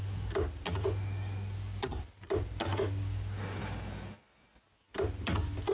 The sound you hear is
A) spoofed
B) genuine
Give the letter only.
B